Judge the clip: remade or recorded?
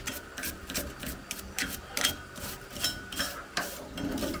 recorded